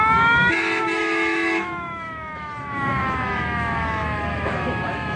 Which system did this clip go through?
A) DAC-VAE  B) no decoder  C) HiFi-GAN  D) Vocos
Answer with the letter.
A